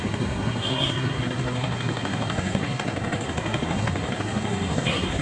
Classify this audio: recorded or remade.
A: remade